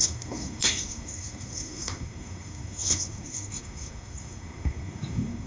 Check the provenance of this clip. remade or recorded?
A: remade